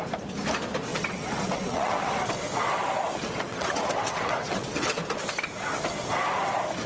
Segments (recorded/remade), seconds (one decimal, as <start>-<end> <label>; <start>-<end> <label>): 0.0-0.9 recorded; 0.9-2.1 remade; 2.1-3.5 recorded; 3.5-4.9 remade; 4.9-6.9 recorded